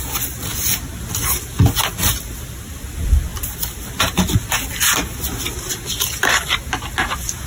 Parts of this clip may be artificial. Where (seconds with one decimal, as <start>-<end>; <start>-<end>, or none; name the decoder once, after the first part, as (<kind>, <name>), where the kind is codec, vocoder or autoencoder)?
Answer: none